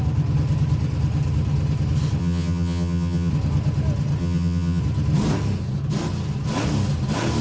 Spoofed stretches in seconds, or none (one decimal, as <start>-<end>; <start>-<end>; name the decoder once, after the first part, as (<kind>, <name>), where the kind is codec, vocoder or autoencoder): 2.2-3.3 (vocoder, HiFi-GAN); 4.2-4.8